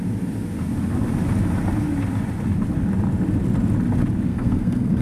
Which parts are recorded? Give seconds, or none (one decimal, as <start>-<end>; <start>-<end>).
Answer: 0.0-4.3